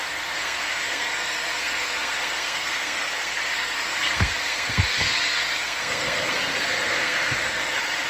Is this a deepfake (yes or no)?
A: yes